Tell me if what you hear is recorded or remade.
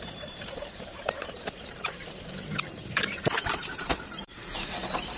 remade